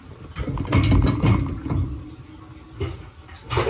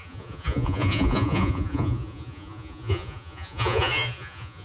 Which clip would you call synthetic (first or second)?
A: second